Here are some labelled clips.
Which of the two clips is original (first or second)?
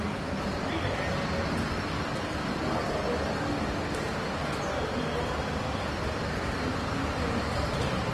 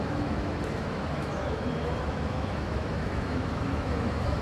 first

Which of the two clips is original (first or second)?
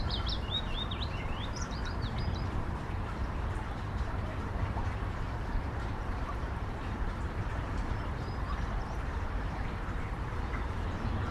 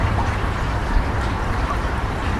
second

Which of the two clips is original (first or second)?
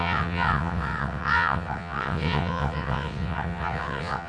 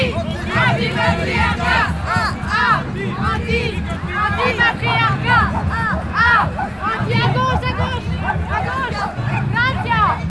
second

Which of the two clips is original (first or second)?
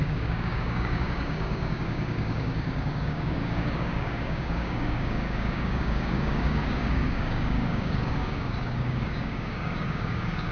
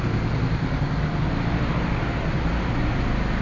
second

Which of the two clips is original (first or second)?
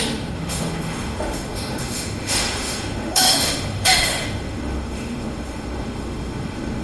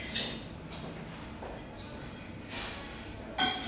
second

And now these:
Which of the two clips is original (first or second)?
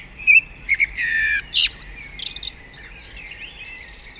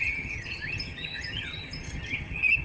first